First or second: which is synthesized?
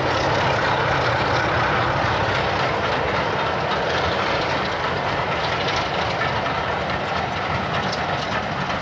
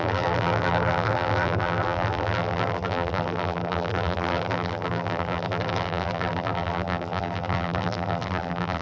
second